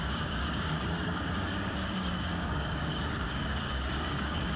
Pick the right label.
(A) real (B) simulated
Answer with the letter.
B